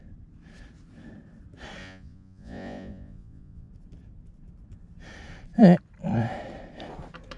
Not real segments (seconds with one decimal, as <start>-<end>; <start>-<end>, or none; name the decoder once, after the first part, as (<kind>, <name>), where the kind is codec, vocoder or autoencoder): 1.8-3.7 (vocoder, Vocos)